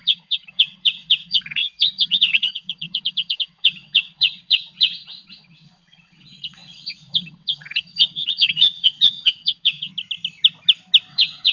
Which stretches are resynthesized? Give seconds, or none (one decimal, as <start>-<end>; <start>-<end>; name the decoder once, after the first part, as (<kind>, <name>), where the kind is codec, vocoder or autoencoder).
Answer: 0.0-9.9 (vocoder, WaveNeXt); 11.1-11.5